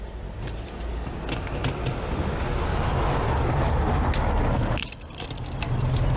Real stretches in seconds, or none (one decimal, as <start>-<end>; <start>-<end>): 0.0-6.2

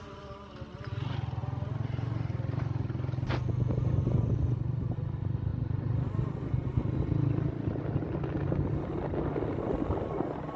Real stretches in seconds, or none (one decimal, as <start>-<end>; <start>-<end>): 0.0-10.6

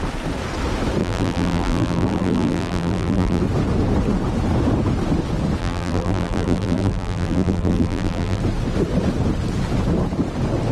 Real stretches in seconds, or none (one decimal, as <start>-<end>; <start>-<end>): 0.0-1.0; 3.4-5.6; 8.4-10.7

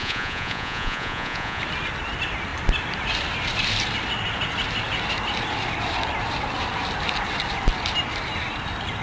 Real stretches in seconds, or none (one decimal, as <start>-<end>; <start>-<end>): 1.6-9.0

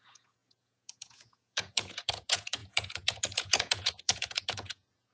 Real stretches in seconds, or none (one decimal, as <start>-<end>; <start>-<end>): none

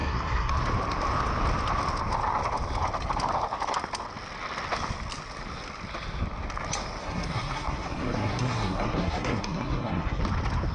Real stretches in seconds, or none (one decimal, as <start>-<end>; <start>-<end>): 0.5-7.0; 10.2-10.7